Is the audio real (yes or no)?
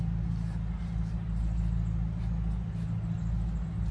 yes